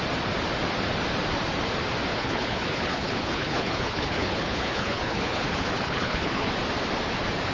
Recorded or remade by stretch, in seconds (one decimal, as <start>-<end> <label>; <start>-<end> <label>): 0.0-2.1 recorded; 2.1-6.5 remade; 6.5-7.5 recorded